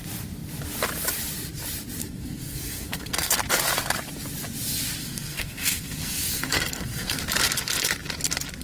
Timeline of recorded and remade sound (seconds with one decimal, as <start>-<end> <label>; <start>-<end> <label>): 0.0-2.0 recorded; 2.0-3.3 remade; 3.3-5.0 recorded; 5.0-7.2 remade; 7.2-8.6 recorded